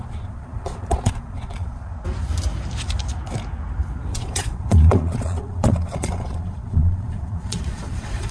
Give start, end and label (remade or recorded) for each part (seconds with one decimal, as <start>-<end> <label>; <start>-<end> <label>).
0.0-1.9 remade; 1.9-4.1 recorded; 4.1-8.3 remade